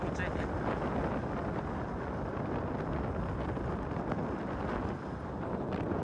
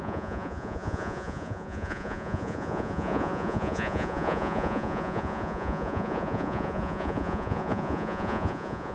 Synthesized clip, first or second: second